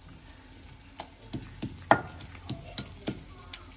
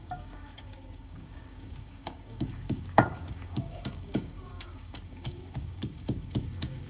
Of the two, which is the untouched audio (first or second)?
first